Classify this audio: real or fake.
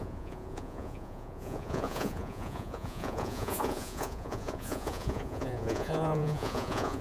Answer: fake